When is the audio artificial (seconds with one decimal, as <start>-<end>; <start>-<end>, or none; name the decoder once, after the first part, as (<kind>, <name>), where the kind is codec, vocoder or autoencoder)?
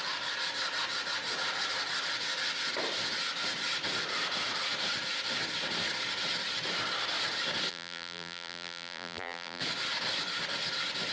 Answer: 7.7-9.6 (vocoder, BigVGAN v2)